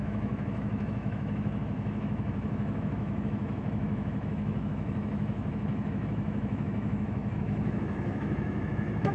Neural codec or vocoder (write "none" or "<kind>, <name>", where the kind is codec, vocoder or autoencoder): autoencoder, DAC-VAE